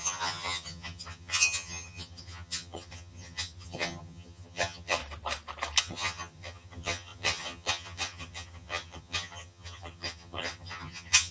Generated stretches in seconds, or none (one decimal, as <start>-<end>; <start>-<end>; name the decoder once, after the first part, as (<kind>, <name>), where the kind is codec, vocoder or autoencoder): 0.0-5.0 (vocoder, HiFi-GAN); 5.8-11.3